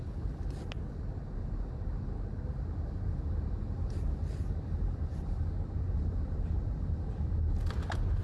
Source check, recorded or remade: recorded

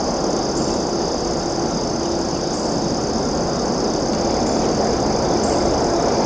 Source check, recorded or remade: recorded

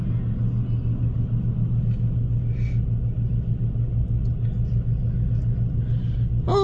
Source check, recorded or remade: recorded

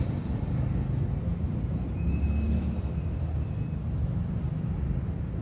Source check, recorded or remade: recorded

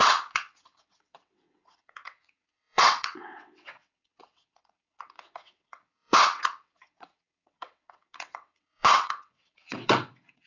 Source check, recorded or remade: remade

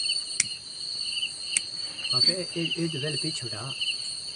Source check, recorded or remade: recorded